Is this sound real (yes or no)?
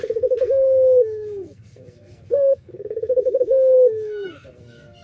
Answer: no